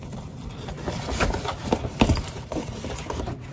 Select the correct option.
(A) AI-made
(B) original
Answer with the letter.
B